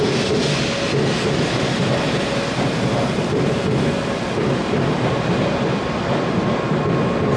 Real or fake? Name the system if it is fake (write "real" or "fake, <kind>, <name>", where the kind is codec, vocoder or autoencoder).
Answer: real